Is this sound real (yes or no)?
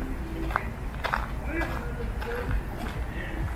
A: yes